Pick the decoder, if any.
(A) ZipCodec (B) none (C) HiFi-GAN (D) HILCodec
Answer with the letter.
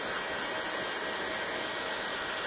B